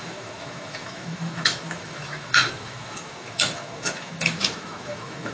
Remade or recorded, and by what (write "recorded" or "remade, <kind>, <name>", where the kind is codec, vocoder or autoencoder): remade, autoencoder, DAC-VAE